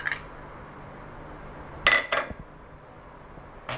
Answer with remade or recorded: recorded